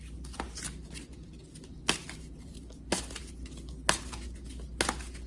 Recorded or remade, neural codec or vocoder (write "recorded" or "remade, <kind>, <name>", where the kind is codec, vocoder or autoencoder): recorded